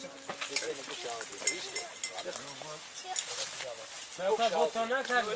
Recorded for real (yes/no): yes